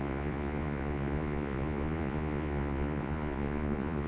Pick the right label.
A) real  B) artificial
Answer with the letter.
B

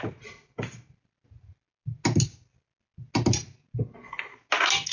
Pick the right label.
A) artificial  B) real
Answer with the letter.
B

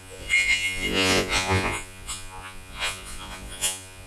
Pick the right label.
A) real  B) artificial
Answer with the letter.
B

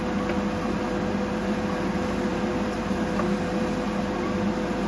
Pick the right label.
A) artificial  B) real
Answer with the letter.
B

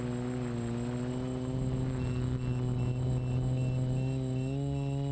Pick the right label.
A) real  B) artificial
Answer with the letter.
A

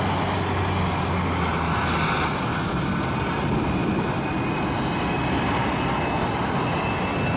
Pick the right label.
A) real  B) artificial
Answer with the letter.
A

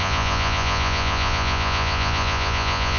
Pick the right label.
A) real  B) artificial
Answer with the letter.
B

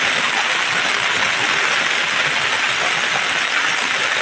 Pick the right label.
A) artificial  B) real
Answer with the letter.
B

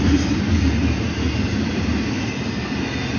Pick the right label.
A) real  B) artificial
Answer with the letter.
A